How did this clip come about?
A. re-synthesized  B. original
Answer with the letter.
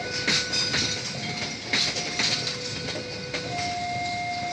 B